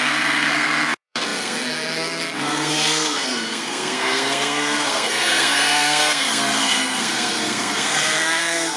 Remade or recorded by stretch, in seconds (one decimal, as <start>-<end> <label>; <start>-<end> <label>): 0.0-8.8 remade